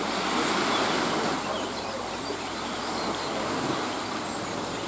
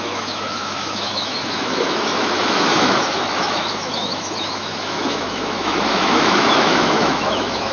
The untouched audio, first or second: first